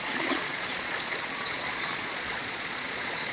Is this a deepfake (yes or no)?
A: yes